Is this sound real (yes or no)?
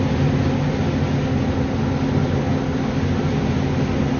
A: yes